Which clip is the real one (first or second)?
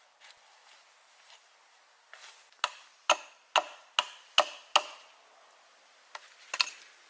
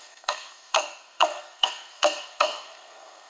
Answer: first